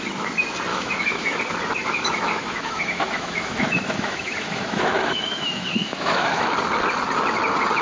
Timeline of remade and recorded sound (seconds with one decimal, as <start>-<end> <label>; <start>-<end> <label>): 0.0-0.7 recorded; 0.7-1.4 remade; 1.4-1.8 recorded; 1.8-6.5 remade; 6.5-7.8 recorded